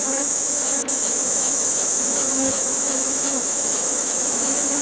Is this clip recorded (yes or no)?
no